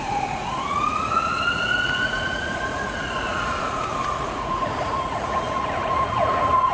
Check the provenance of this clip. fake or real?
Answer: fake